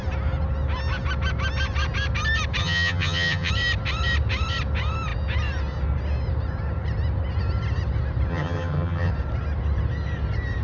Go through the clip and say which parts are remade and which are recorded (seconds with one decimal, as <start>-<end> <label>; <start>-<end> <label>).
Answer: 0.0-2.6 recorded; 2.6-3.5 remade; 3.5-8.3 recorded; 8.3-9.1 remade; 9.1-10.6 recorded